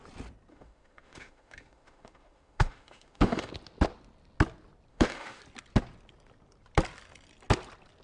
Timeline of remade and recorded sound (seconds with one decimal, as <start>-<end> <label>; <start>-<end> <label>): 0.0-0.5 recorded; 0.5-3.5 remade; 3.5-4.9 recorded; 4.9-5.4 remade; 5.4-8.0 recorded